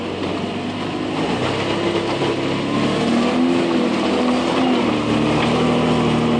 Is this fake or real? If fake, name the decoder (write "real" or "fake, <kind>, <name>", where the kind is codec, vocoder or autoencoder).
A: real